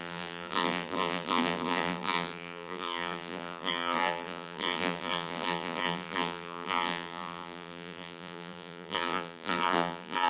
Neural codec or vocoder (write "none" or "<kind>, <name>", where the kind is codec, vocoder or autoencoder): vocoder, BigVGAN v2